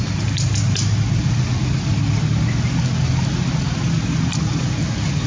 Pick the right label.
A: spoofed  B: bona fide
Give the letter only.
B